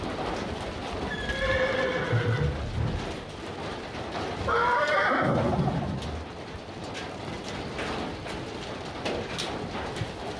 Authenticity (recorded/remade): recorded